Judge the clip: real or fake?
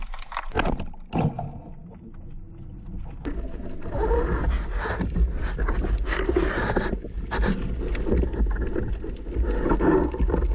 real